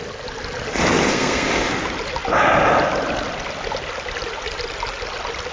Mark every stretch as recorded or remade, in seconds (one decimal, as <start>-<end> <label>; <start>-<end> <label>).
0.0-1.1 recorded; 1.1-1.7 remade; 1.7-5.5 recorded